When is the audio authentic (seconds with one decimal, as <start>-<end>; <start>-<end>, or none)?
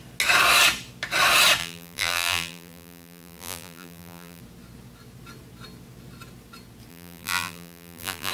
0.0-1.6; 4.4-6.9